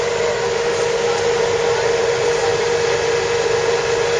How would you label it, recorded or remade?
recorded